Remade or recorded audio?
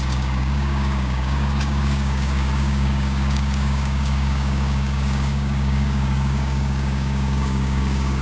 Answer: remade